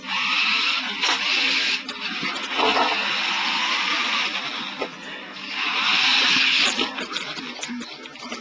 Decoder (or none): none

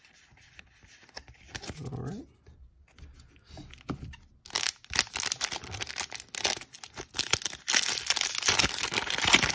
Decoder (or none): none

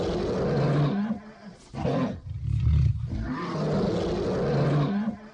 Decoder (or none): none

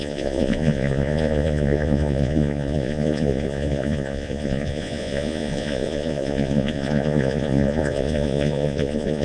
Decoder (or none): vocoder, Vocos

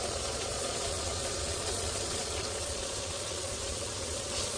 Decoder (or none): vocoder, Vocos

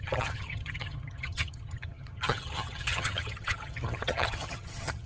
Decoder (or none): vocoder, HiFi-GAN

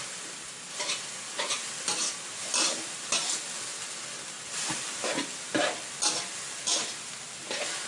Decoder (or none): none